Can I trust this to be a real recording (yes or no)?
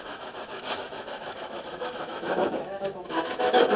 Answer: no